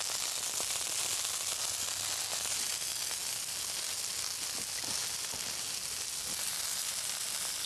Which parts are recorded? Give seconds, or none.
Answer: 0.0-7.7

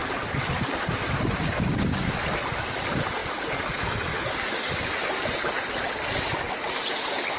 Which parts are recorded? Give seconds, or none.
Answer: 0.0-7.4

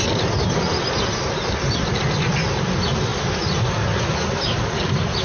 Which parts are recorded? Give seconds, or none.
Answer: 0.0-5.2

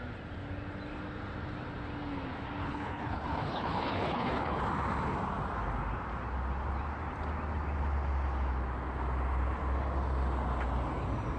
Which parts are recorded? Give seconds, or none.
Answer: 0.0-2.6; 4.6-11.4